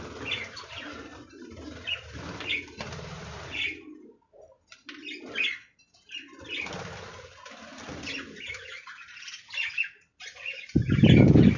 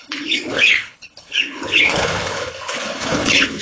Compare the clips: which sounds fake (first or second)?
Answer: second